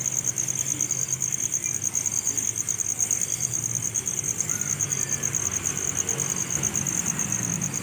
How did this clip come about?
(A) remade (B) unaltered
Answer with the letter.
B